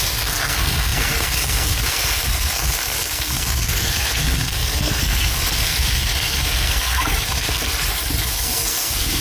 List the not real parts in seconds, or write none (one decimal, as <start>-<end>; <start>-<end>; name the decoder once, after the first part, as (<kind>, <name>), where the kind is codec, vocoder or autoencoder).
0.0-7.7 (codec, SNAC); 8.2-9.2